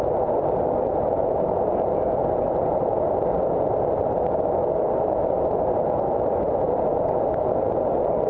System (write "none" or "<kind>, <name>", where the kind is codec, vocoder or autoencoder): none